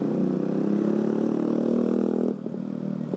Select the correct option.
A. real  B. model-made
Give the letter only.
A